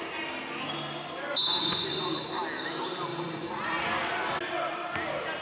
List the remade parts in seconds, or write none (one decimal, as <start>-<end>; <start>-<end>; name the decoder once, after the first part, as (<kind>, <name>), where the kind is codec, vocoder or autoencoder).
1.4-2.3 (vocoder, Vocos); 3.1-3.8